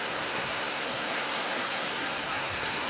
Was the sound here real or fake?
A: fake